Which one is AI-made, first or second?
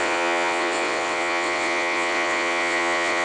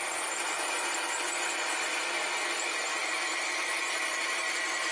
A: first